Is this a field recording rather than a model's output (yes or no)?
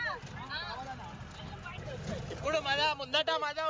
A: yes